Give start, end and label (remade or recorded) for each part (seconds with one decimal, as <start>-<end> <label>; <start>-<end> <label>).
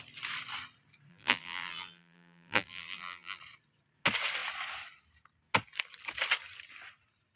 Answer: 0.0-1.1 recorded; 1.1-3.4 remade; 3.4-7.4 recorded